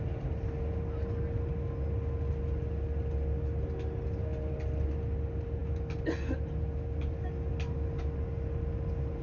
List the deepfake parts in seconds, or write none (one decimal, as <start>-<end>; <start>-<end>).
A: none